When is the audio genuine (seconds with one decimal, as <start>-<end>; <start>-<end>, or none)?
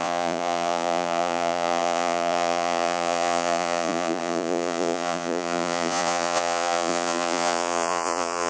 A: none